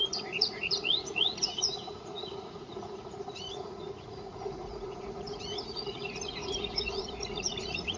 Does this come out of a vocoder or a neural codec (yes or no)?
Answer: yes